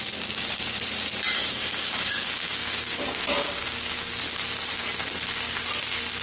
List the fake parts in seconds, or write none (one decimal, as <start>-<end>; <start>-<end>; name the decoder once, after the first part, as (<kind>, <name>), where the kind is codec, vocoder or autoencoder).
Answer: 1.4-4.2 (codec, DAC)